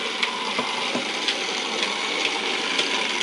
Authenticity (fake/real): real